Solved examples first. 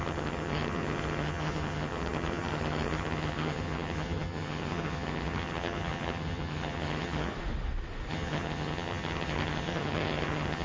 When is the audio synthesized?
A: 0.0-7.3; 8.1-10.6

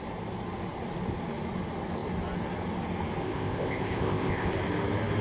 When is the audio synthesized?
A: 3.2-4.5

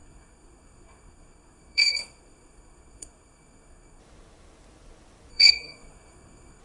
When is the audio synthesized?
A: 0.0-4.0; 5.3-6.6

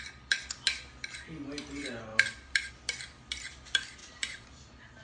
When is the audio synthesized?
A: 2.1-2.7; 4.0-5.0

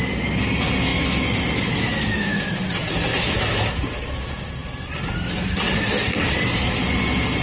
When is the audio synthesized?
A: 0.9-2.5; 3.1-3.7